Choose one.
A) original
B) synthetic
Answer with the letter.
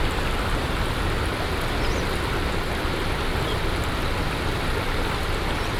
A